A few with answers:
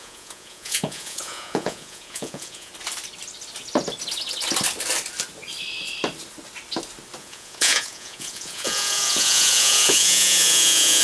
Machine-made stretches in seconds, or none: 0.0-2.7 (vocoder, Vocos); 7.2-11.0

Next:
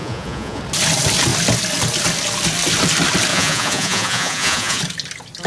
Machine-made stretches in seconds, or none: 0.0-0.6 (vocoder, Vocos); 3.3-4.8

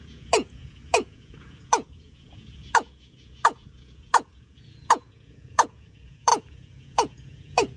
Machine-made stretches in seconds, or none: 0.0-7.8 (vocoder, Vocos)